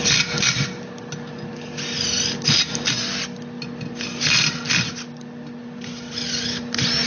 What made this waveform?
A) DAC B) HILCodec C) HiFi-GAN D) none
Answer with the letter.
D